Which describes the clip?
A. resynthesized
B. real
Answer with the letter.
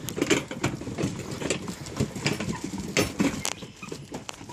B